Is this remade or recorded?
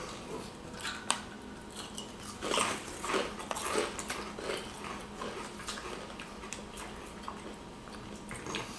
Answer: recorded